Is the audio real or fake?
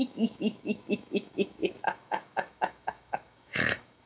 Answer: fake